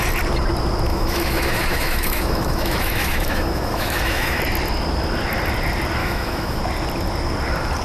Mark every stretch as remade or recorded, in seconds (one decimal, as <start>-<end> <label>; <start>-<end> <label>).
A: 0.0-0.9 recorded; 0.9-4.4 remade; 4.4-6.0 recorded; 6.0-6.6 remade; 6.6-7.8 recorded